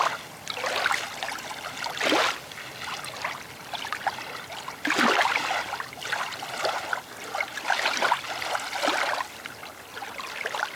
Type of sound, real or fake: real